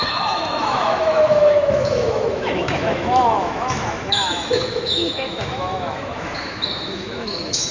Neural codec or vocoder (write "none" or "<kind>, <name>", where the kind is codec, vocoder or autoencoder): autoencoder, DAC-VAE